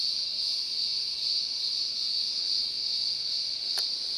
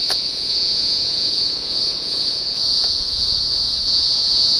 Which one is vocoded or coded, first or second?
second